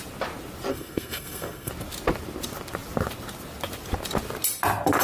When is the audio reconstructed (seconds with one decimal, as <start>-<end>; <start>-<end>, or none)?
0.7-1.7